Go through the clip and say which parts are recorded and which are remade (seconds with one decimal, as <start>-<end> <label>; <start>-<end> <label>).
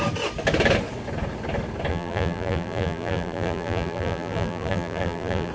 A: 0.0-1.9 recorded; 1.9-5.5 remade